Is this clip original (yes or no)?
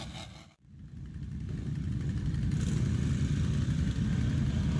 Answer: yes